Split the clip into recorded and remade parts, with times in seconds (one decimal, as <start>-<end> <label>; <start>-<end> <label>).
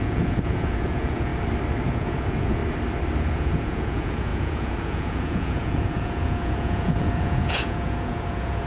0.0-1.3 remade; 1.3-1.9 recorded; 1.9-2.6 remade; 2.6-3.2 recorded; 3.2-8.7 remade